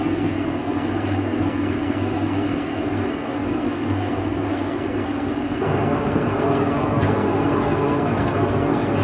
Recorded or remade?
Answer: remade